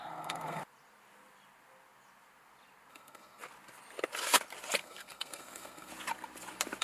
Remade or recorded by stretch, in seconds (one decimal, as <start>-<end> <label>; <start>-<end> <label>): 0.0-0.6 remade; 0.6-2.9 recorded; 2.9-3.4 remade; 3.4-4.8 recorded; 4.8-5.9 remade; 5.9-6.8 recorded